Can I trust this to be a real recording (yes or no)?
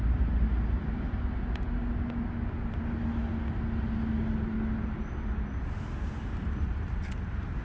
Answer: yes